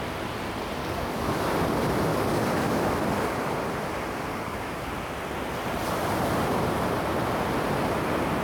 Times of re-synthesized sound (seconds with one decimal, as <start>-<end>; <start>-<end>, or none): 0.8-1.4; 2.1-2.9; 4.3-4.9